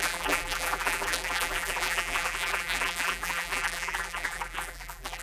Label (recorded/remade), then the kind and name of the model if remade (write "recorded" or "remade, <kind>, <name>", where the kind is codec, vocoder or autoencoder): remade, vocoder, BigVGAN v2